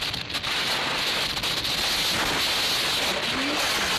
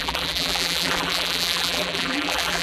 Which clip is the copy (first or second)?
second